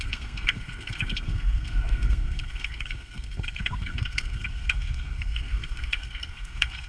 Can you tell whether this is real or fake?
fake